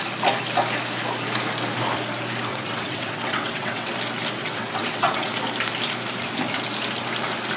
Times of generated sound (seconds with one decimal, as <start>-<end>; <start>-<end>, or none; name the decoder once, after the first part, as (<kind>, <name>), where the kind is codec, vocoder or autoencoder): 2.5-3.9 (vocoder, WaveNeXt); 4.4-5.4